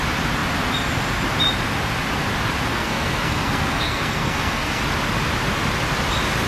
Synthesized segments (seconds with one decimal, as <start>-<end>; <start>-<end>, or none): 2.7-4.8